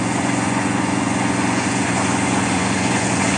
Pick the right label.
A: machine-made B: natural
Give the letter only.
A